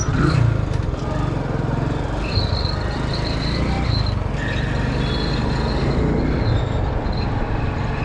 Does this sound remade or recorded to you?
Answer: recorded